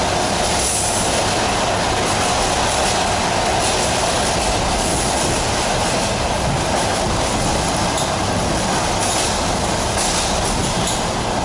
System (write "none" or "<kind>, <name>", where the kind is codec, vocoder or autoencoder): none